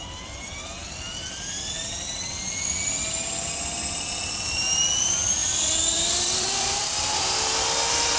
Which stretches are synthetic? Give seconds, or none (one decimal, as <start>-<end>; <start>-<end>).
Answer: 5.4-7.1